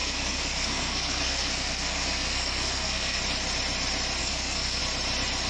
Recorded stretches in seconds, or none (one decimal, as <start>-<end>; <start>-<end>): 3.2-4.2; 4.8-5.5